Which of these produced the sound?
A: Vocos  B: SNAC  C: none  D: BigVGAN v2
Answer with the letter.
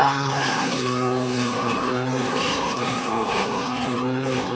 B